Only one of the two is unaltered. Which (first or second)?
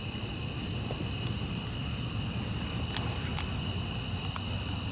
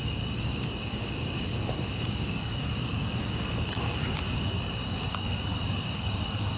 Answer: first